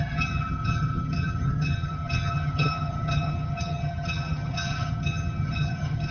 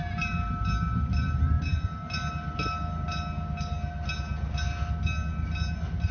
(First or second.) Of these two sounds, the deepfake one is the first